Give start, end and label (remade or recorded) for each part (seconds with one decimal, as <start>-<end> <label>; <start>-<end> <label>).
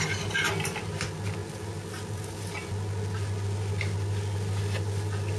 0.0-5.4 recorded